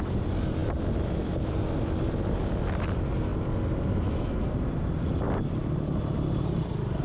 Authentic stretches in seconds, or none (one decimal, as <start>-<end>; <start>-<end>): 0.0-7.0